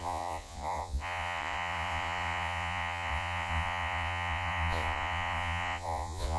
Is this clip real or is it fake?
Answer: fake